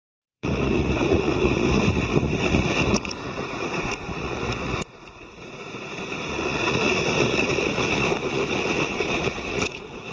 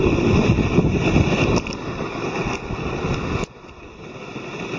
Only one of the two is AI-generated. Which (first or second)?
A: first